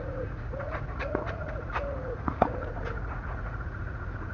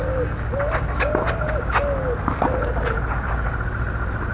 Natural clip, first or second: second